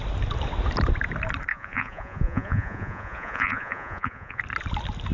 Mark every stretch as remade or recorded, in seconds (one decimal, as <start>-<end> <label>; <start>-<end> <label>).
0.0-1.5 recorded; 1.5-4.4 remade; 4.4-5.1 recorded